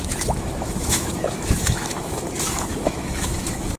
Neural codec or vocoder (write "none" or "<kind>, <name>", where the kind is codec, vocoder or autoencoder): autoencoder, DAC-VAE